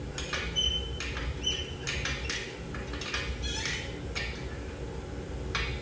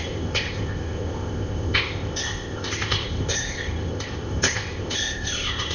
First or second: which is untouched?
first